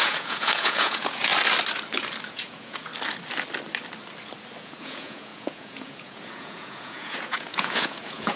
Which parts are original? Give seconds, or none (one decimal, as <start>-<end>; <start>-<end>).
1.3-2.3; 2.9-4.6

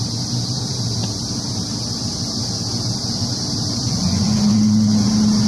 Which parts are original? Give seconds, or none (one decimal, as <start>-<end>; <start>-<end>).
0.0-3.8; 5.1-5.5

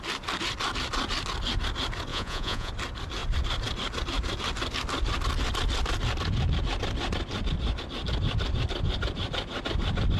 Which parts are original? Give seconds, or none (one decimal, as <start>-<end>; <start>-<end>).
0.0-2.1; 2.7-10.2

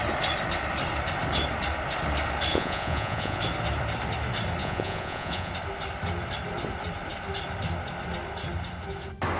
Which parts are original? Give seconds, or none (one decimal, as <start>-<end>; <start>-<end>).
0.0-2.5; 3.4-4.6; 5.5-9.4

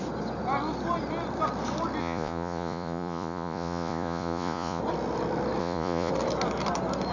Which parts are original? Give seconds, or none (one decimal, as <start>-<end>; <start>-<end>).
0.0-2.0; 4.8-5.6; 6.1-7.1

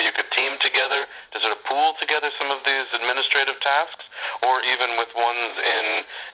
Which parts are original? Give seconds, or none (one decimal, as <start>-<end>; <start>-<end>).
1.3-5.5

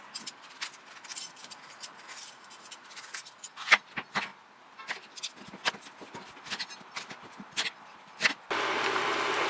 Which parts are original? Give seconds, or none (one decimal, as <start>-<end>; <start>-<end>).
0.0-1.1; 3.8-9.5